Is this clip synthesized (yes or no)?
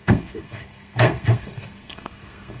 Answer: yes